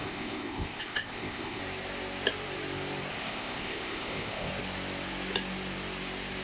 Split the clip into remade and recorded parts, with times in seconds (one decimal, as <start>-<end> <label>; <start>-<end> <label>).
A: 0.0-1.6 remade; 1.6-3.1 recorded; 3.1-4.5 remade; 4.5-6.4 recorded